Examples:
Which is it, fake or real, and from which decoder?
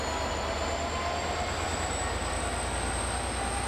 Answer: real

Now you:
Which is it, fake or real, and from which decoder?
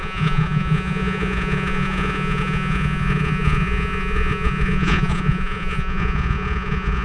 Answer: fake, vocoder, Vocos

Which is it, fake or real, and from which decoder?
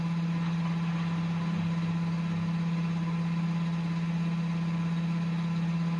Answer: real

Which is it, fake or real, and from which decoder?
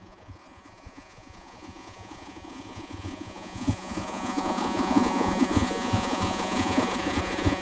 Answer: fake, vocoder, Vocos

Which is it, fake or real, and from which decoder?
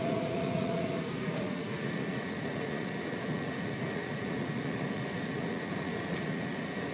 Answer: fake, vocoder, Vocos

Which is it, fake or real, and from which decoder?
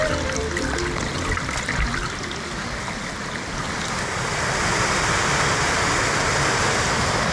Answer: real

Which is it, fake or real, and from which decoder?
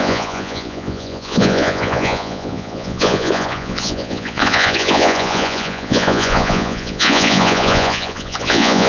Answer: fake, vocoder, Vocos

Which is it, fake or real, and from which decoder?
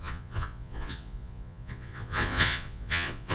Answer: fake, vocoder, Vocos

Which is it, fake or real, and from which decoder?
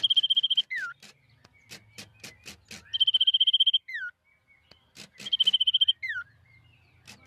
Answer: real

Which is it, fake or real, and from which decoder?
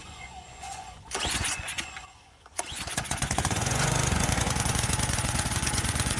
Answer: fake, vocoder, Vocos